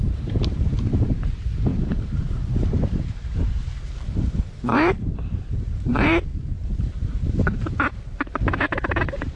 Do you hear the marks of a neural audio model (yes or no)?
yes